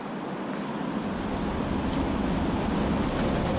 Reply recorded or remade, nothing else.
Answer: recorded